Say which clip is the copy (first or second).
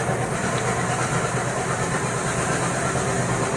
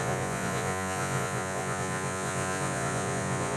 second